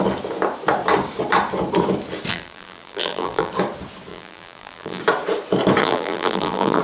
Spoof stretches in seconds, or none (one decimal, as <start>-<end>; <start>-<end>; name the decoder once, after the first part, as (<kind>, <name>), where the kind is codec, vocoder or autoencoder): 2.3-3.5 (vocoder, BigVGAN v2); 4.1-5.0; 5.8-6.8